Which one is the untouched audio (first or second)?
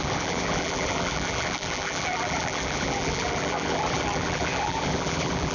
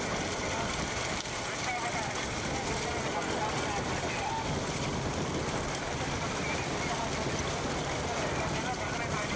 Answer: second